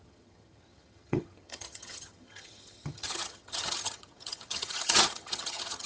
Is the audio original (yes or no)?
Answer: no